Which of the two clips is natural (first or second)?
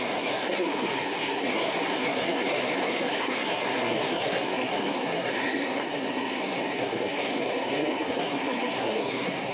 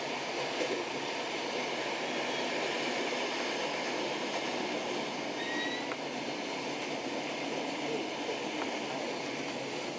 second